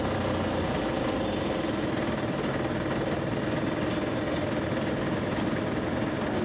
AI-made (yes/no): no